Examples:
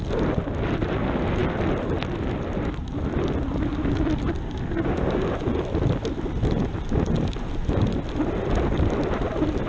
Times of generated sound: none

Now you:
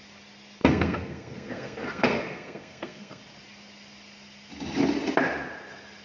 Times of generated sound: 0.6-3.2 (codec, SNAC)

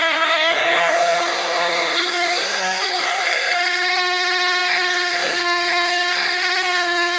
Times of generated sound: 0.0-7.2 (codec, SNAC)

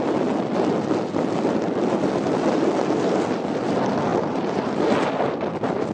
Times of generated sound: none

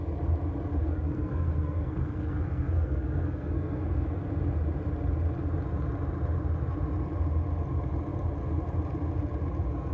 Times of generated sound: 0.8-4.2 (codec, SNAC)

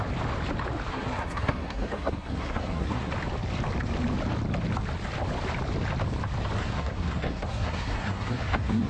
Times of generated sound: 0.9-3.1 (codec, SNAC); 6.6-8.9

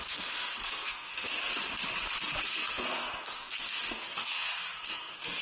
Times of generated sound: 0.0-1.6 (codec, SNAC); 2.4-5.4